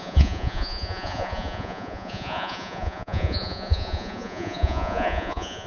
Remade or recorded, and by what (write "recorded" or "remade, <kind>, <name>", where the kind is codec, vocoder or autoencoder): remade, vocoder, Vocos